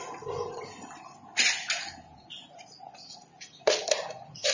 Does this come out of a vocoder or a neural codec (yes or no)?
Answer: no